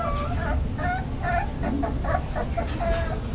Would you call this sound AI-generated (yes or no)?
no